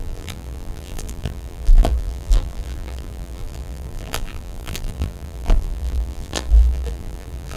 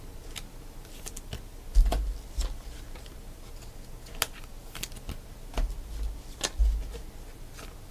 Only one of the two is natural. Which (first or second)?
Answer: second